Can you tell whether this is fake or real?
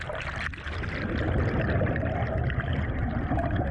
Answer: real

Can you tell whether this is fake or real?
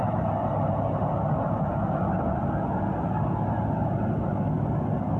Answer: real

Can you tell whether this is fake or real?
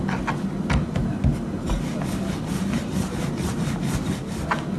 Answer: real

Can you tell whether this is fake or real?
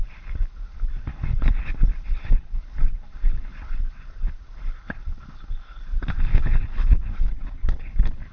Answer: fake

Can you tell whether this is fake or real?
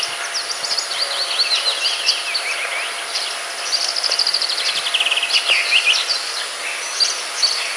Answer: real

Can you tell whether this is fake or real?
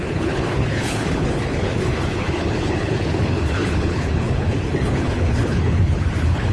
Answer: fake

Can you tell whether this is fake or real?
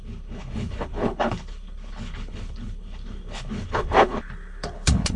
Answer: fake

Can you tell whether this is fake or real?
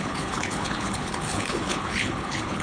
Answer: fake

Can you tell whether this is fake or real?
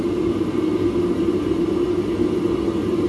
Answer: real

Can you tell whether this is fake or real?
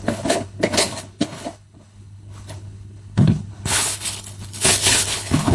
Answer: fake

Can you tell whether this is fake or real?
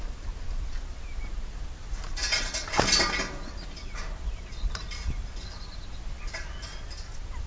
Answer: real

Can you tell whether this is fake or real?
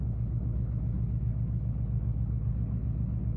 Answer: fake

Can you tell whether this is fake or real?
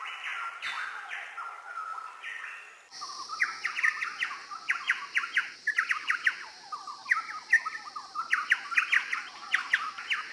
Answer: real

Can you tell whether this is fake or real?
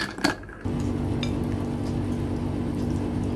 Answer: real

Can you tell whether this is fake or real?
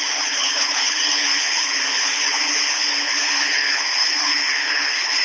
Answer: fake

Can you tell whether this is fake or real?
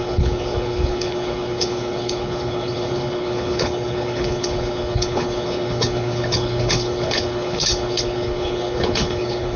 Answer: fake